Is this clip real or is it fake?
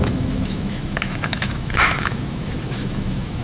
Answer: fake